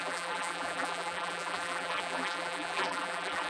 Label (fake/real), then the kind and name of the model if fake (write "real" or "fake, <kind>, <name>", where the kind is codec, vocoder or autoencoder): fake, vocoder, BigVGAN v2